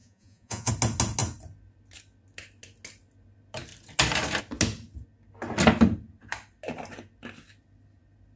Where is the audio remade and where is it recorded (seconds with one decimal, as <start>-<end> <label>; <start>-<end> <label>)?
0.0-0.7 remade; 0.7-8.4 recorded